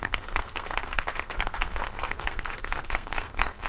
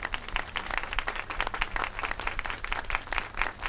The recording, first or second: second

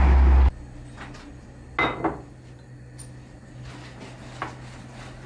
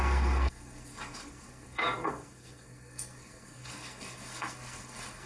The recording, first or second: first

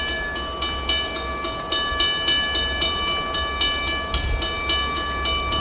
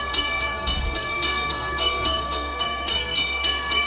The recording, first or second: first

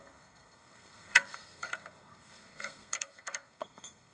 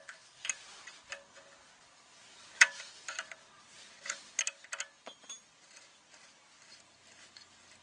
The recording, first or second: second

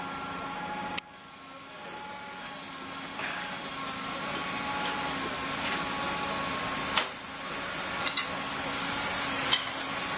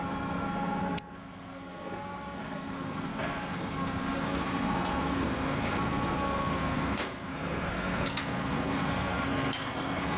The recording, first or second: first